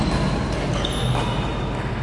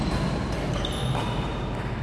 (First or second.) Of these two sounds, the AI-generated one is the second